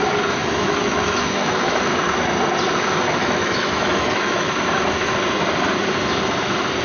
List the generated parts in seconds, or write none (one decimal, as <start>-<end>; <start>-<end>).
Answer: 0.4-1.8; 3.2-4.5